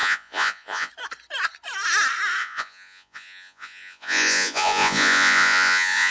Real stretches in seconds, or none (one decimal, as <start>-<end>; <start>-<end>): 0.9-2.4